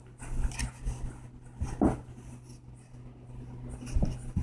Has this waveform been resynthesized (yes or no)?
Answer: no